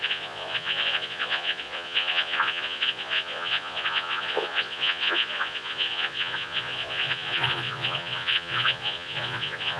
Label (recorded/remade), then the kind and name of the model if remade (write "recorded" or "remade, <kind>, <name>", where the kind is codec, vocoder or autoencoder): remade, vocoder, Vocos